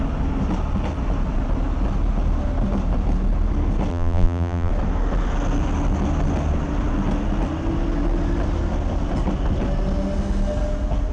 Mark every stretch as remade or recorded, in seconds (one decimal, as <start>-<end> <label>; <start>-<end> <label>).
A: 0.0-3.9 recorded; 3.9-4.7 remade; 4.7-11.1 recorded